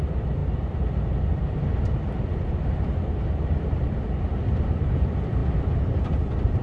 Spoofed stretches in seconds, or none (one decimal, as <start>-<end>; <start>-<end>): 0.0-0.4; 2.2-5.4

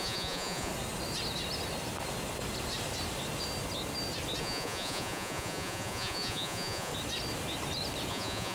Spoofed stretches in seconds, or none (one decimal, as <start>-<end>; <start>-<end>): 0.0-0.7; 4.4-6.9; 8.1-8.5

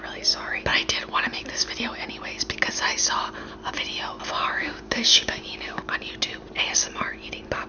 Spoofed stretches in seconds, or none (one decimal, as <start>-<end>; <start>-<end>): 4.6-5.8